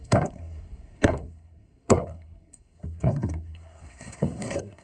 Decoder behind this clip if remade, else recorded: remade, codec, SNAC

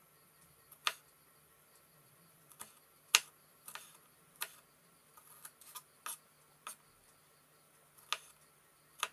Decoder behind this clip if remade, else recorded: recorded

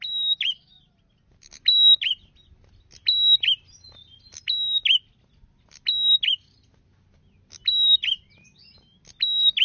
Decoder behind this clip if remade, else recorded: recorded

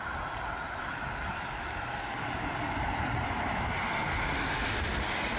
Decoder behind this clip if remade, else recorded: recorded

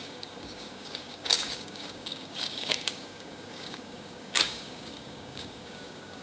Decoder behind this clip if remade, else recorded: remade, codec, DAC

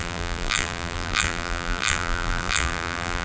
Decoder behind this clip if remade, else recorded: remade, vocoder, BigVGAN v2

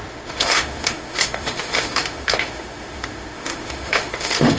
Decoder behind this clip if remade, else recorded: remade, autoencoder, DAC-VAE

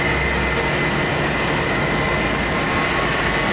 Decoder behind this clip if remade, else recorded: recorded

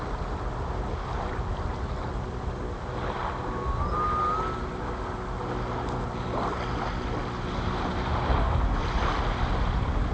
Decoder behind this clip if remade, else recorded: recorded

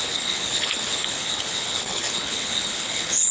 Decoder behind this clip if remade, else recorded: remade, codec, HILCodec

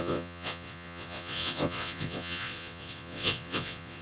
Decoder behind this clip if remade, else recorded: remade, vocoder, Vocos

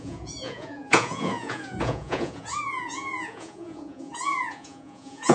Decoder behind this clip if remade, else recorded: remade, vocoder, Vocos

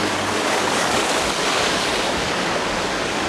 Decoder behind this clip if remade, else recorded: remade, codec, DAC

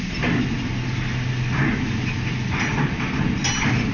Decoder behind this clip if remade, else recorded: recorded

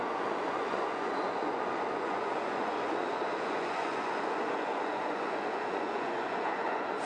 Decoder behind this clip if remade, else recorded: remade, vocoder, Vocos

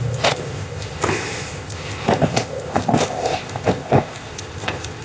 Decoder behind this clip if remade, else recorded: remade, codec, ZipCodec